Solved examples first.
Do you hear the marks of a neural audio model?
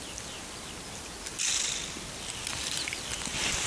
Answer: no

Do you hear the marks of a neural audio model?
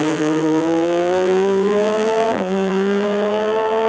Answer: yes